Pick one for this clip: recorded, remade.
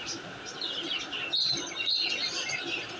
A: recorded